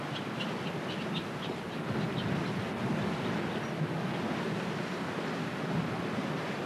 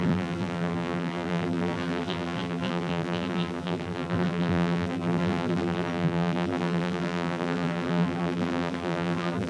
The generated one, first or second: second